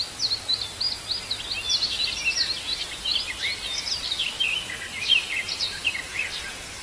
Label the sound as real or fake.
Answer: real